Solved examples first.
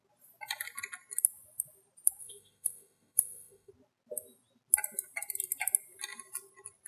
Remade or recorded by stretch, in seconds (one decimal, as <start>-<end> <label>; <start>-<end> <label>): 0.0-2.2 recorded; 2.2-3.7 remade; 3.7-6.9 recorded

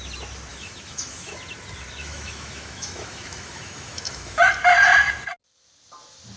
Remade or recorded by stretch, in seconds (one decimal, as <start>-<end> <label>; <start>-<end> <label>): 0.0-0.5 recorded; 0.5-1.4 remade; 1.4-2.0 recorded; 2.0-4.4 remade; 4.4-6.4 recorded

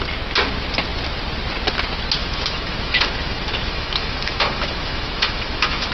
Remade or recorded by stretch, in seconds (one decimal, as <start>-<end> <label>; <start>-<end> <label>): 0.0-2.2 recorded; 2.2-5.9 remade